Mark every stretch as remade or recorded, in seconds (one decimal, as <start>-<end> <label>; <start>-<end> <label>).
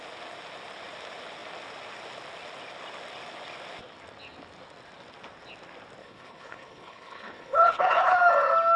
0.0-6.0 recorded; 6.0-8.2 remade; 8.2-8.8 recorded